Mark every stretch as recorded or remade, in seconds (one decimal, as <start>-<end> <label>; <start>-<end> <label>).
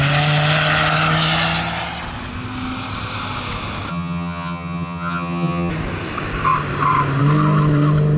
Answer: 0.0-3.9 recorded; 3.9-5.7 remade; 5.7-8.2 recorded